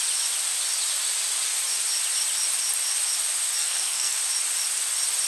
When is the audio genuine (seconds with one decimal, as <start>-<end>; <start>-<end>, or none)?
0.0-3.6; 4.2-5.3